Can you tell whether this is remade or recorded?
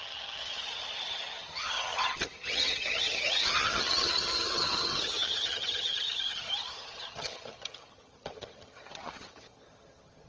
remade